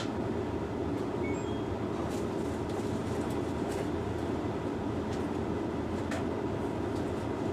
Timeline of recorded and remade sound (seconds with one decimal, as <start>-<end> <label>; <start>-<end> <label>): 0.0-3.0 recorded; 3.0-4.6 remade; 4.6-7.5 recorded